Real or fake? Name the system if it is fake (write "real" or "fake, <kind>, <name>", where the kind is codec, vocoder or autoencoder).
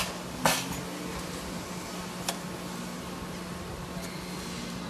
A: real